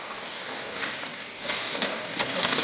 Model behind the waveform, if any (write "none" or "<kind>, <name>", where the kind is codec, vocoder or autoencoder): codec, DAC